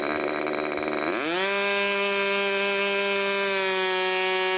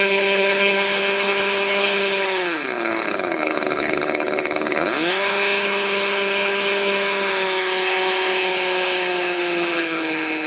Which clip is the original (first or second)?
first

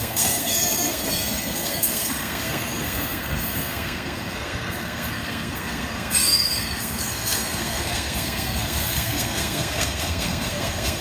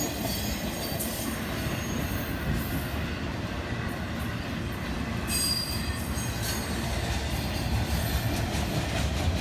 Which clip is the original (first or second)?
second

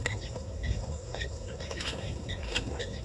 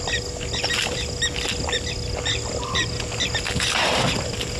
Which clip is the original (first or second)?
second